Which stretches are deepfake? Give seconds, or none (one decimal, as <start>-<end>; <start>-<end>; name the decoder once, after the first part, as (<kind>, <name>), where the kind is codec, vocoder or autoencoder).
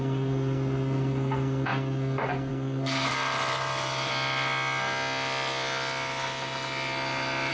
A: 0.0-3.1 (codec, SNAC)